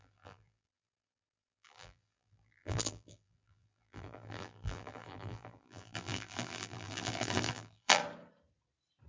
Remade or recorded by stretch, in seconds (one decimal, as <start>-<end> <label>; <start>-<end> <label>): 0.0-8.0 remade; 8.0-9.1 recorded